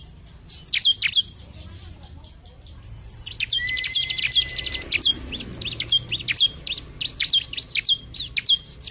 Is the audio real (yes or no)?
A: yes